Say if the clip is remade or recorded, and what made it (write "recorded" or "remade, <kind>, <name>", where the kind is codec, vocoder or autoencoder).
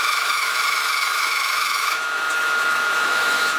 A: remade, autoencoder, DAC-VAE